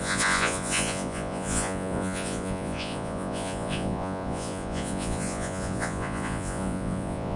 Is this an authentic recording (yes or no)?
no